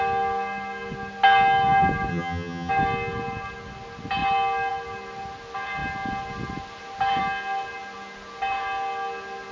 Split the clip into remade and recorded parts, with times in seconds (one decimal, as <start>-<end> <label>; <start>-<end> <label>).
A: 0.0-2.1 recorded; 2.1-2.7 remade; 2.7-9.5 recorded